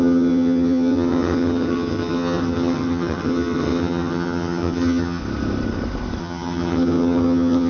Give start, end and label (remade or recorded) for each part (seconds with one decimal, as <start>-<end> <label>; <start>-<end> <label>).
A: 0.0-5.2 remade; 5.2-6.2 recorded; 6.2-7.7 remade